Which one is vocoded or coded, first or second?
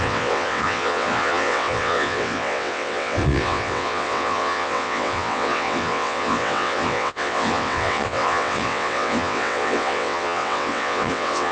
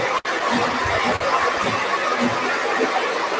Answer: first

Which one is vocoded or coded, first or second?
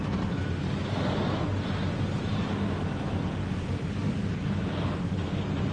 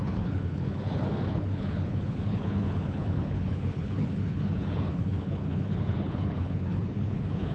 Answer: second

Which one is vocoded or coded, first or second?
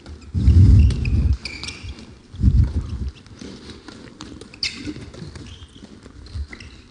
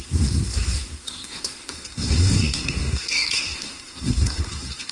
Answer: second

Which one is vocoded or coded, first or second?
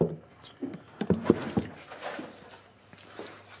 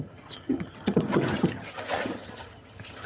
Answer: second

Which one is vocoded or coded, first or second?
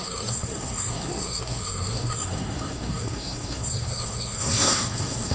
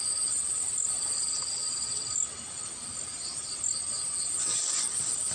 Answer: first